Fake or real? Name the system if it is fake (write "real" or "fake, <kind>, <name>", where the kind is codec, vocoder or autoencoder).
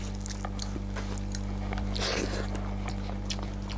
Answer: real